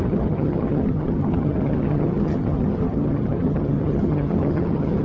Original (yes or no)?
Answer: no